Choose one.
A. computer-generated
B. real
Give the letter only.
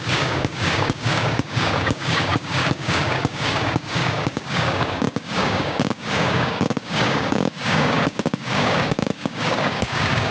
A